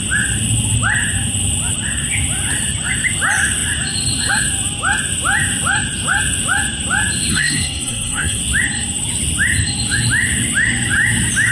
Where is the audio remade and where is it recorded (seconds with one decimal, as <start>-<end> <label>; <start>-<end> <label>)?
0.0-7.3 recorded; 7.3-8.4 remade; 8.4-11.5 recorded

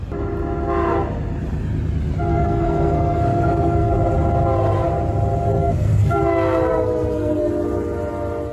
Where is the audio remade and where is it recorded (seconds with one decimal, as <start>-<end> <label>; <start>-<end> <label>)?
0.0-2.3 recorded; 2.3-3.9 remade; 3.9-5.5 recorded; 5.5-6.2 remade; 6.2-6.7 recorded; 6.7-7.5 remade; 7.5-8.5 recorded

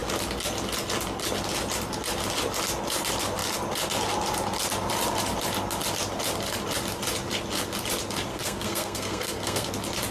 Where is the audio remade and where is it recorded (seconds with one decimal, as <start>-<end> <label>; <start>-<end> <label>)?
0.0-8.3 recorded; 8.3-9.7 remade; 9.7-10.1 recorded

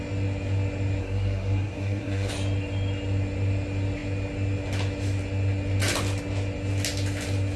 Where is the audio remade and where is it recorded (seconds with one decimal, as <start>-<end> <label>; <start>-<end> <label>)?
0.0-1.0 recorded; 1.0-2.3 remade; 2.3-7.6 recorded